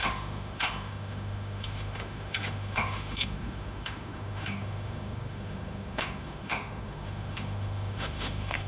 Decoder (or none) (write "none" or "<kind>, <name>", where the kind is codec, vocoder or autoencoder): autoencoder, DAC-VAE